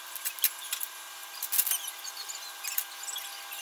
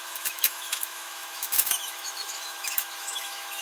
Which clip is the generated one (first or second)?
second